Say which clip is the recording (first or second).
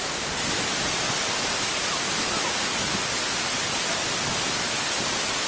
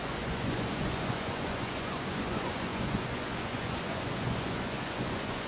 first